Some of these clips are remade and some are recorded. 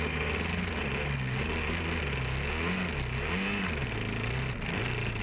recorded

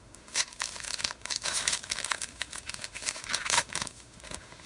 remade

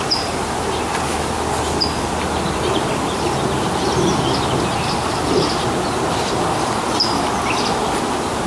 recorded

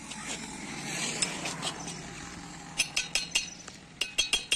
recorded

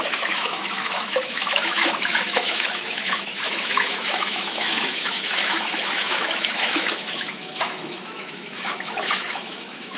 remade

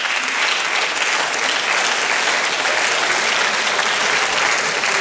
recorded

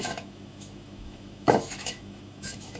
remade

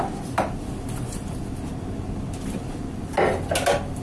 recorded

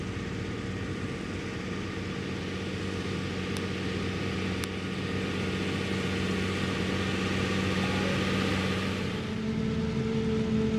recorded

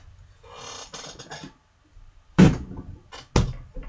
recorded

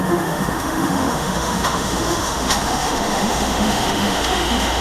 remade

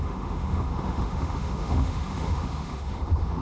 remade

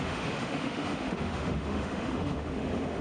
remade